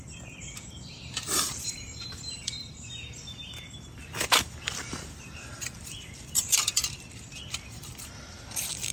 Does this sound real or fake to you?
fake